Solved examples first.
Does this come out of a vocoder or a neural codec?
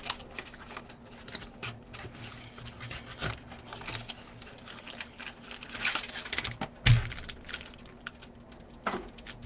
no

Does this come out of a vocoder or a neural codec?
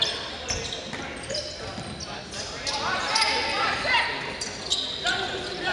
no